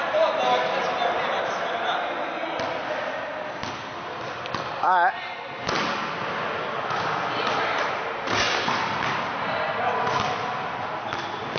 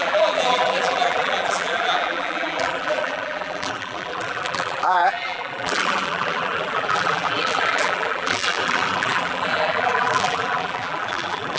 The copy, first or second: second